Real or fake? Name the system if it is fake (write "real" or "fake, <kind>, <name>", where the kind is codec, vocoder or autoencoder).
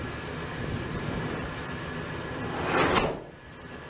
real